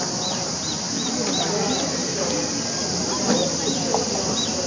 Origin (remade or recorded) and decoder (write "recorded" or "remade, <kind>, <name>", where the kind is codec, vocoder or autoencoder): recorded